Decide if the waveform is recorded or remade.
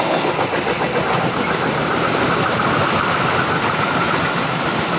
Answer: recorded